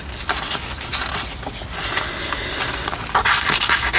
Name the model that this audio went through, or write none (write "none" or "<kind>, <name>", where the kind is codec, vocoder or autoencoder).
none